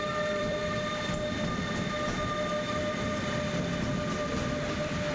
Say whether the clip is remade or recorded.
remade